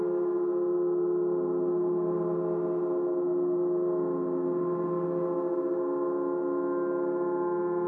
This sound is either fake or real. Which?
real